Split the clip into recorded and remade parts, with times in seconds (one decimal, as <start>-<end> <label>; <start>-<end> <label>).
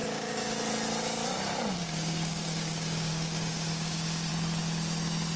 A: 0.0-0.6 remade; 0.6-1.8 recorded; 1.8-4.3 remade; 4.3-5.4 recorded